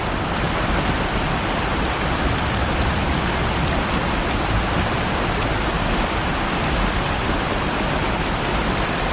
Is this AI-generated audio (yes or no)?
yes